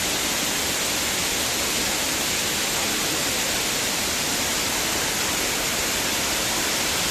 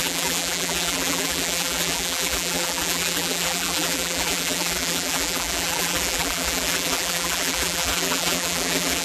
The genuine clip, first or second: first